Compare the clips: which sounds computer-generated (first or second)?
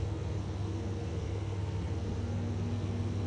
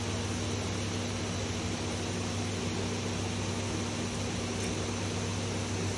first